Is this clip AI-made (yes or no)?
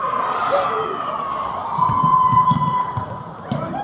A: no